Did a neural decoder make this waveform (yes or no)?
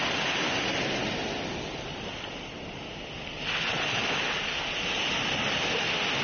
no